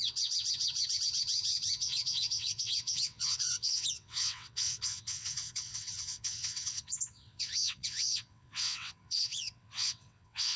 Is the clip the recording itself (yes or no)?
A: no